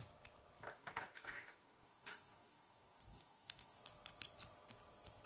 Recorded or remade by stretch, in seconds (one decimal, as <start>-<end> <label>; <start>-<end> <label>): 0.0-0.7 recorded; 0.7-3.8 remade; 3.8-5.3 recorded